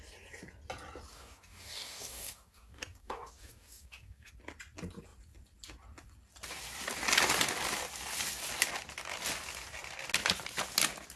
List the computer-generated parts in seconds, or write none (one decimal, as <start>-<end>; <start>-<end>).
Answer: 1.1-4.3